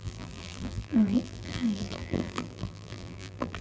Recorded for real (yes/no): no